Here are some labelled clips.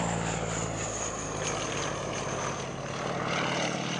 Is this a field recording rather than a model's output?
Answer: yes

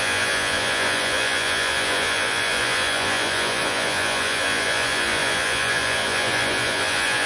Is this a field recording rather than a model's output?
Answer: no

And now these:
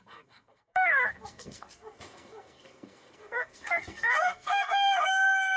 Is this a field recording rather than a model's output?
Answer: no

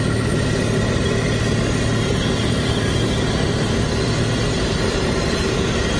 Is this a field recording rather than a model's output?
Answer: yes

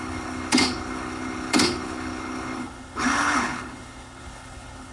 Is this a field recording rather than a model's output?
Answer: no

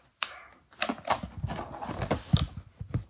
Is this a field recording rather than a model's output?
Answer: yes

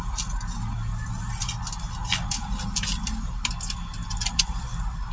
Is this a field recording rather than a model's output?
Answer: yes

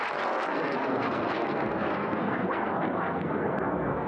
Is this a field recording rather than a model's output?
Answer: no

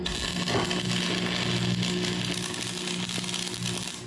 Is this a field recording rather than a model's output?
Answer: yes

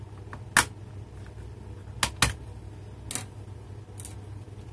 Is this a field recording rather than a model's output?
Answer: yes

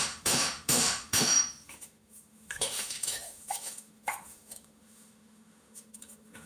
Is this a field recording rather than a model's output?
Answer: no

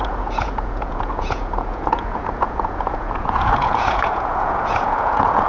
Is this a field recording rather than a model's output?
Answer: no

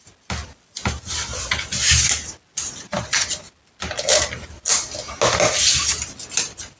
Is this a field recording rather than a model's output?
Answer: yes